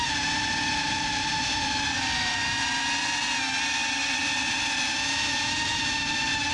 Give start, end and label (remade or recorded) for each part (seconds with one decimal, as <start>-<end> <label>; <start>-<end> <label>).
0.0-0.8 recorded; 0.8-1.5 remade; 1.5-6.5 recorded